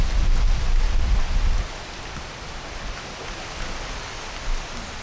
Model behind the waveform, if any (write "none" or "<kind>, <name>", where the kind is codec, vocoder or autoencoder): none